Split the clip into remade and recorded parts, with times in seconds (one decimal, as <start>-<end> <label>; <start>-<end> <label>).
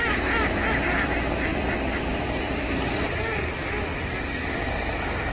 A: 0.0-0.4 recorded; 0.4-1.1 remade; 1.1-1.5 recorded; 1.5-3.9 remade; 3.9-5.3 recorded